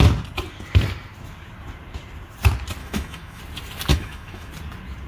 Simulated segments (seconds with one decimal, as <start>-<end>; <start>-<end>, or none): 2.8-3.4; 3.9-4.5